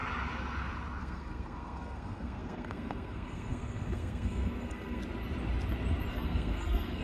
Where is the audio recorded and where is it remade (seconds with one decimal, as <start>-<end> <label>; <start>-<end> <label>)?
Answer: 0.0-1.0 recorded; 1.0-5.0 remade; 5.0-6.1 recorded; 6.1-7.0 remade